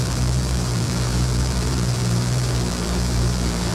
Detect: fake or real fake